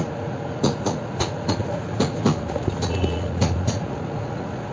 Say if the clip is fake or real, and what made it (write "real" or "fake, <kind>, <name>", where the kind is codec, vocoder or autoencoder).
fake, vocoder, Vocos